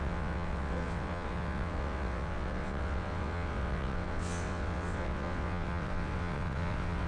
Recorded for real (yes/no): no